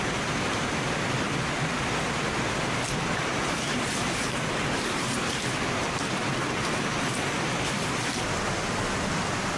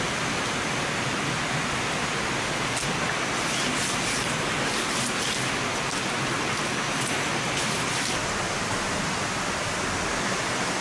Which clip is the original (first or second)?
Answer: second